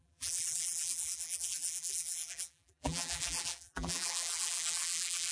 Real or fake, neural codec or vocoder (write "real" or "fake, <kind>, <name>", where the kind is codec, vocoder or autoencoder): fake, vocoder, BigVGAN v2